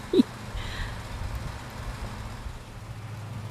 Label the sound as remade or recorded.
recorded